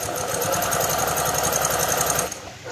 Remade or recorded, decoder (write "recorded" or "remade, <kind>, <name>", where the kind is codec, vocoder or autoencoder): recorded